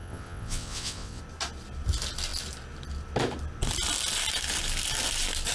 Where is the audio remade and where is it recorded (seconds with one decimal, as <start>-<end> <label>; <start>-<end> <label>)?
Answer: 0.0-1.2 remade; 1.2-5.5 recorded

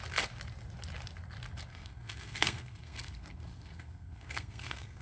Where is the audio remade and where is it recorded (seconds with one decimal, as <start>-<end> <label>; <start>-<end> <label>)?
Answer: 0.0-1.7 recorded; 1.7-5.0 remade

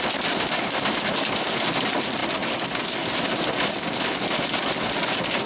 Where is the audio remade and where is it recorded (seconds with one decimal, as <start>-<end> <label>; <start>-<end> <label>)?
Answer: 0.0-5.5 recorded

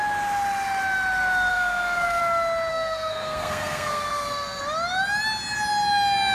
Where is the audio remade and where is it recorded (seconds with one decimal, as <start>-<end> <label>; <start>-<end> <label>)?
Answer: 0.0-1.5 recorded; 1.5-2.2 remade; 2.2-2.7 recorded; 2.7-4.6 remade; 4.6-6.3 recorded